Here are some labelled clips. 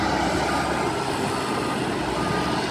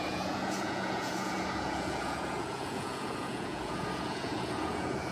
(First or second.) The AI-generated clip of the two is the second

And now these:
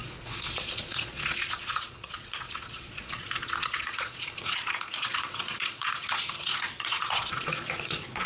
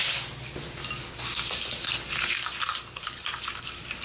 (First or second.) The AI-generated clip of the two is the first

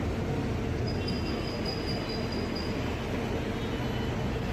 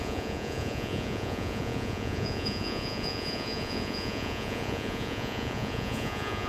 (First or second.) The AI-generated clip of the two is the second